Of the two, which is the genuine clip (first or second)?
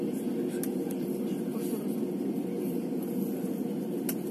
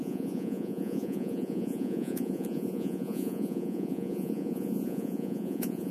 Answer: first